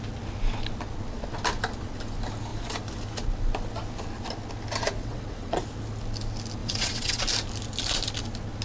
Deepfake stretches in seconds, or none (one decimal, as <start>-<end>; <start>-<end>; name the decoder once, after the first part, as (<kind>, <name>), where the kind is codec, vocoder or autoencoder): 5.0-5.6 (vocoder, WaveNeXt); 6.6-7.2